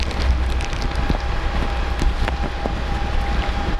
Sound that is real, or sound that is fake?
real